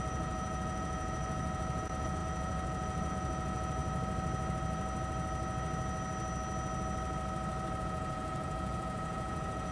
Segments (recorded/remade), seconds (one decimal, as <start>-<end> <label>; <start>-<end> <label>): 0.0-3.8 remade; 3.8-7.8 recorded; 7.8-9.7 remade